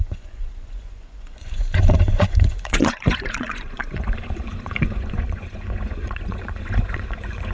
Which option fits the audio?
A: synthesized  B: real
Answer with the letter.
A